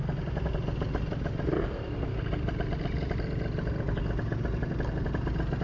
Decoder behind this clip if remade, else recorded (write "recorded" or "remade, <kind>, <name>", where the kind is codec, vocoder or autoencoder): recorded